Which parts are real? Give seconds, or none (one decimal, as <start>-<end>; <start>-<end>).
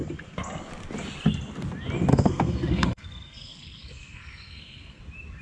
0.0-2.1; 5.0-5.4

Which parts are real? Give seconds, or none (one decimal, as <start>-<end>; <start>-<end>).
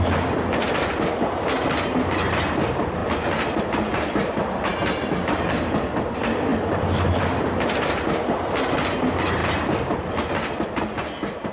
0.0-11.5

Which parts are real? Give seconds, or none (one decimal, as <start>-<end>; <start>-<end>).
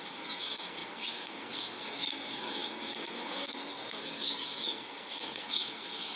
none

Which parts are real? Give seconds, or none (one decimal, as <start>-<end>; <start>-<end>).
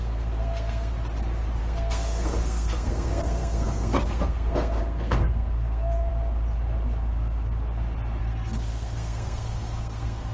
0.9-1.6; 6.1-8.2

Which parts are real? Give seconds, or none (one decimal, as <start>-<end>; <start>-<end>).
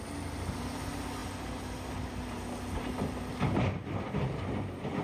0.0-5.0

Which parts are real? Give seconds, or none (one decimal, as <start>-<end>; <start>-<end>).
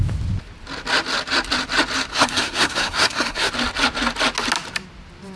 0.0-2.1; 3.5-5.4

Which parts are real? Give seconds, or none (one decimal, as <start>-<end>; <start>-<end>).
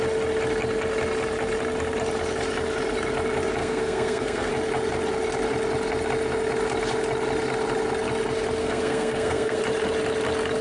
0.0-3.6; 4.5-8.6; 9.6-10.6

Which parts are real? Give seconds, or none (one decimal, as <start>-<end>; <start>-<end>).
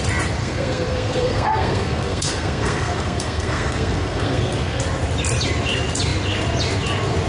0.0-0.4; 4.8-7.3